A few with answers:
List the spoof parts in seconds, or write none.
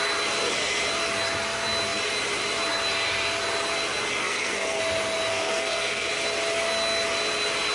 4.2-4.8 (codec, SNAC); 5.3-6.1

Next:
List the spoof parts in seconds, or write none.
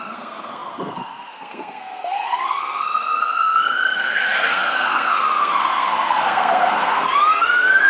0.0-7.9 (codec, SNAC)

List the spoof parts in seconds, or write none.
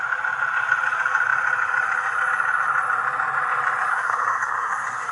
3.9-5.1 (codec, SNAC)